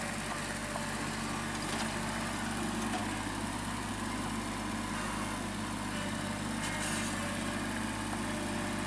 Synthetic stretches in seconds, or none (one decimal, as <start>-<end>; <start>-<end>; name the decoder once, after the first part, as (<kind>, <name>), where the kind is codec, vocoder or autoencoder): none